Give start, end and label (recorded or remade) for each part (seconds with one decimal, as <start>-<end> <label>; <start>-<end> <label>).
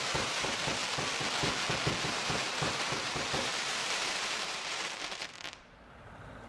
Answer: 0.0-0.8 remade; 0.8-2.0 recorded; 2.0-6.5 remade